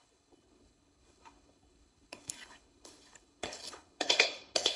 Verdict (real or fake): fake